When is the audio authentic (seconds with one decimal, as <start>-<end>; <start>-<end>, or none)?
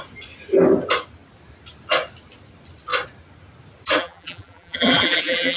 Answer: 0.0-4.0